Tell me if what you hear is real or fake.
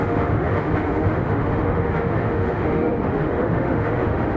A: fake